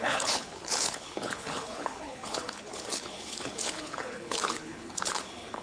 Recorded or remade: remade